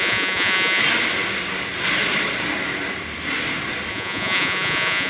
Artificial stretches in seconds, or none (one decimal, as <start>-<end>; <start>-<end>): 0.0-0.8; 3.9-5.1